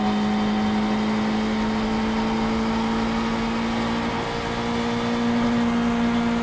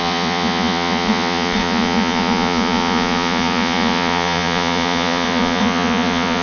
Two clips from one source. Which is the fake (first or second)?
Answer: second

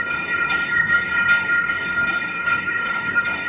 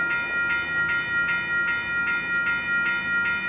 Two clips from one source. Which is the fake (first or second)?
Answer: first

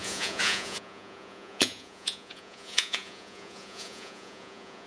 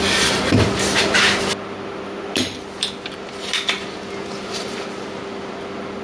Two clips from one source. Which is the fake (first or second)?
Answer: first